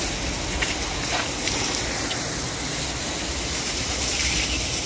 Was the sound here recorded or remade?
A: recorded